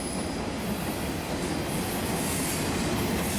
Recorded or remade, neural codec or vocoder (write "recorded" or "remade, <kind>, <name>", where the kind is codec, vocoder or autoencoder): recorded